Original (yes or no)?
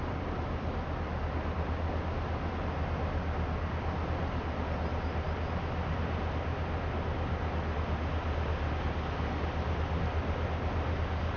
yes